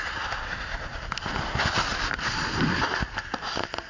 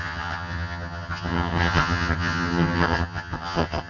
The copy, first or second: second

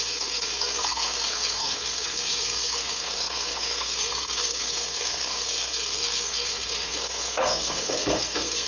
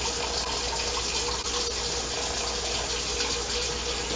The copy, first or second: first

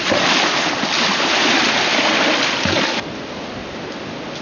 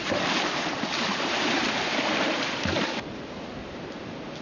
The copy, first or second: second